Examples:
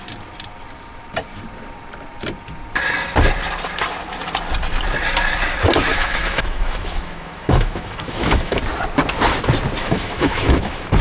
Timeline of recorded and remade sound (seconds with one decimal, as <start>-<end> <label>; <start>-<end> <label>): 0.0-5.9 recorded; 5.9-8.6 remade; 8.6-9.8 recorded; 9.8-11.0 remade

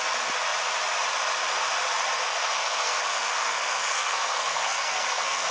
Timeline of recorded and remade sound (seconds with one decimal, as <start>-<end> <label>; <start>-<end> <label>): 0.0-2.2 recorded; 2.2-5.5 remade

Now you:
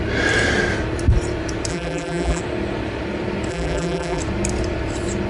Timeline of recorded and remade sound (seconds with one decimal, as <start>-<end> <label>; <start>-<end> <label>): 0.0-1.7 recorded; 1.7-2.4 remade; 2.4-3.5 recorded; 3.5-4.2 remade; 4.2-5.3 recorded